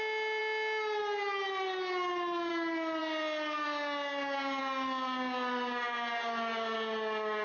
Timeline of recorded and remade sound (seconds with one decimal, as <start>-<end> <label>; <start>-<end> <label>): 0.0-7.4 recorded